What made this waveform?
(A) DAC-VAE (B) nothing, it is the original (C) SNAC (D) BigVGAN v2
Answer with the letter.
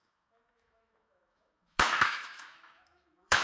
A